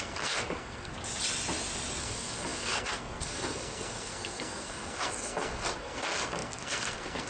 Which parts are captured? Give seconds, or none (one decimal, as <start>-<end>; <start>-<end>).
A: 0.9-2.0